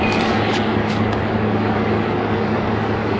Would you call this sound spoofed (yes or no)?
yes